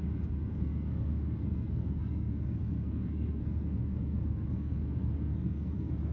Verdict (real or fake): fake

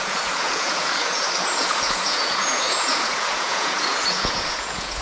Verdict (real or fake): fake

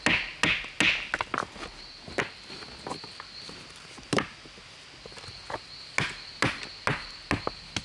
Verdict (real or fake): real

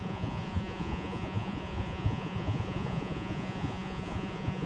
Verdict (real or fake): fake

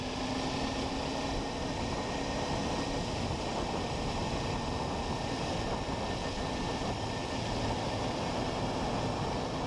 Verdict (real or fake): real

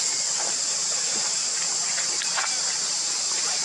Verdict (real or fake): real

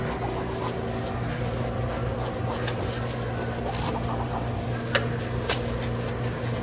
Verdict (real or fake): real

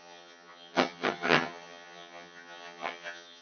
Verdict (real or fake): fake